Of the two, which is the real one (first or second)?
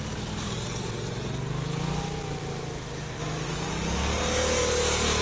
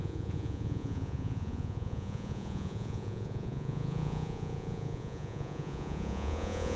first